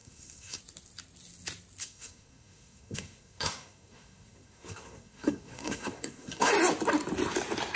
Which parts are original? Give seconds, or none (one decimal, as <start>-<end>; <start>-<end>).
0.6-1.8; 6.5-7.8